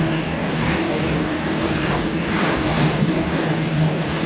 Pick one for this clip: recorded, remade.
remade